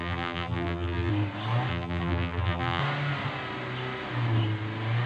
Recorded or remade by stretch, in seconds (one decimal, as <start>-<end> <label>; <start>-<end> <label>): 0.0-1.1 remade; 1.1-1.7 recorded; 1.7-2.8 remade; 2.8-5.1 recorded